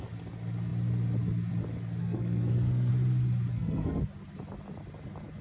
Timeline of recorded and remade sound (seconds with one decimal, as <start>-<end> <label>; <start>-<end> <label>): 0.0-2.0 recorded; 2.0-2.9 remade; 2.9-3.5 recorded; 3.5-4.0 remade; 4.0-5.4 recorded